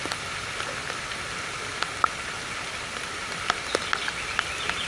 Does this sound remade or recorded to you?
recorded